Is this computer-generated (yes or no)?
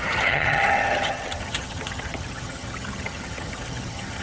yes